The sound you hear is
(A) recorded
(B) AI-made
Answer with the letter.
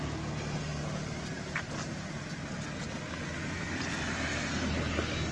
A